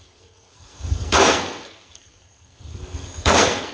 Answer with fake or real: fake